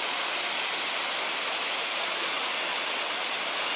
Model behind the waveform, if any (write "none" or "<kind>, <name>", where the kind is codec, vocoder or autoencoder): none